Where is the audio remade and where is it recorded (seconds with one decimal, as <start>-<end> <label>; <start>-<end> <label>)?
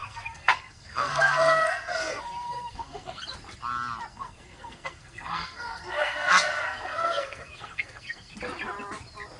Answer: 0.0-3.2 remade; 3.2-4.1 recorded; 4.1-8.3 remade; 8.3-9.4 recorded